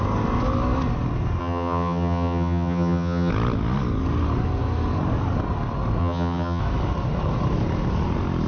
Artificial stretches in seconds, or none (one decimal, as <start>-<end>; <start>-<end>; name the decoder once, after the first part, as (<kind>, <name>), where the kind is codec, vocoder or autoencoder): 1.4-3.3 (vocoder, HiFi-GAN); 6.0-6.6